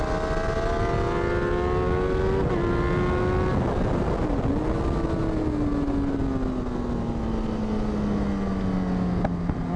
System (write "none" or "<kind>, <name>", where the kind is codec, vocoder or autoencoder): none